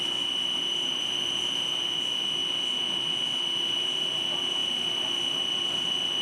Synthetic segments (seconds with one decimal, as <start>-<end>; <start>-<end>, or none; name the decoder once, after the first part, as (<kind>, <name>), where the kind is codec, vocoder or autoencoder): none